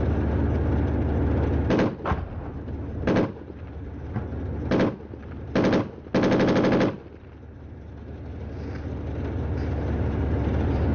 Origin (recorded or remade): recorded